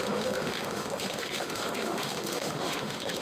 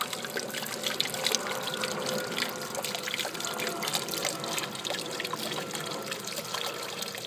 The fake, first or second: first